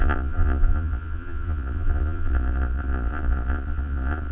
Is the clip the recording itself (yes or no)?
no